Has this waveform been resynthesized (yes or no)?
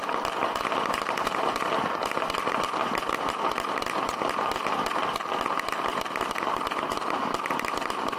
no